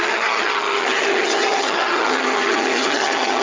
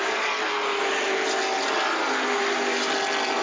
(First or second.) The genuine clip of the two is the second